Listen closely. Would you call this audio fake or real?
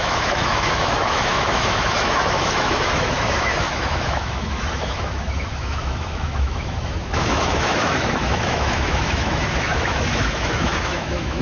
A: fake